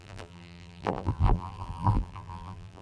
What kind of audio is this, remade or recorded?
remade